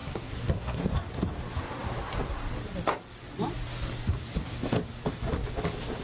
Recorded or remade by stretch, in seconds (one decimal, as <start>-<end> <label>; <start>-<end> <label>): 0.0-0.8 remade; 0.8-6.0 recorded